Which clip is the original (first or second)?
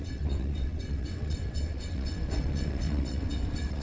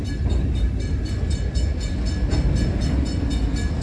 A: second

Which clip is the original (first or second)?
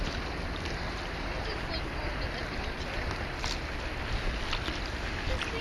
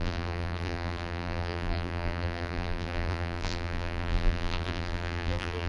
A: first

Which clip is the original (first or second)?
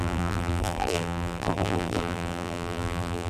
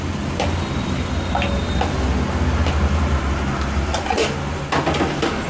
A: second